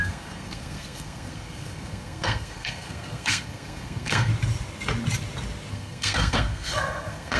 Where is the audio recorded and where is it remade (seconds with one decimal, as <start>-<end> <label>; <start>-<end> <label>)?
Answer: 0.0-4.3 remade; 4.3-5.7 recorded; 5.7-7.4 remade